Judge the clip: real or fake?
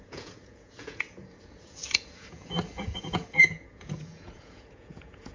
fake